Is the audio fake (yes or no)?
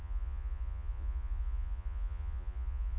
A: yes